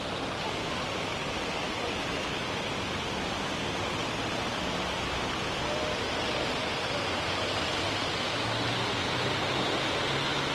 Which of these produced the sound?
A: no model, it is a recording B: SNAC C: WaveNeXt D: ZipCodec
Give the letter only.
A